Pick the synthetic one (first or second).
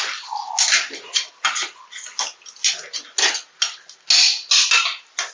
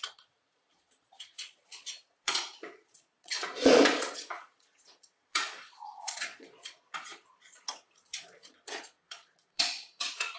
second